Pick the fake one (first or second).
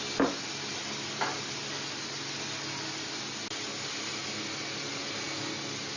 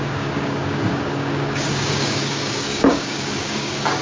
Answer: second